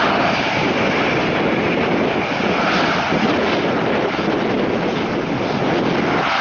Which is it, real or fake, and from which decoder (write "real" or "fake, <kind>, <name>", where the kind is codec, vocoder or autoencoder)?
real